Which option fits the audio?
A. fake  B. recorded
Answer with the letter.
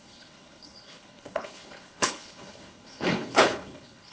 A